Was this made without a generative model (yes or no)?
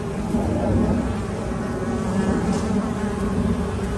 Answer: yes